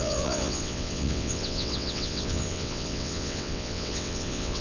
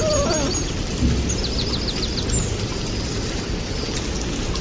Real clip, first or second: second